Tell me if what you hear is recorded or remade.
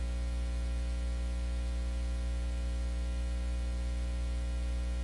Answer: recorded